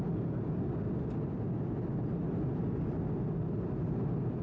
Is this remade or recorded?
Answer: recorded